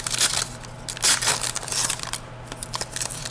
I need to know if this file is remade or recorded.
recorded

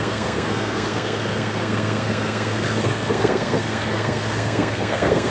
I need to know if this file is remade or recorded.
remade